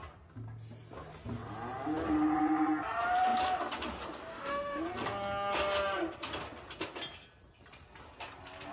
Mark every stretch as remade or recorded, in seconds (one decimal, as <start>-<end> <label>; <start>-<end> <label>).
0.0-4.3 recorded; 4.3-4.8 remade; 4.8-8.7 recorded